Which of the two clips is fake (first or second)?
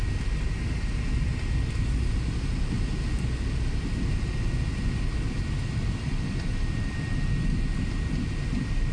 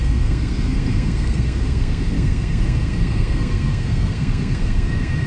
second